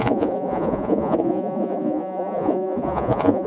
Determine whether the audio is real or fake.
fake